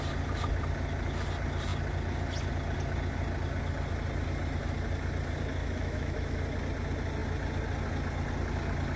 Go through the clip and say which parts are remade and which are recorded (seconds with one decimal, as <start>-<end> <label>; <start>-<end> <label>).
0.0-5.6 recorded; 5.6-6.4 remade; 6.4-9.0 recorded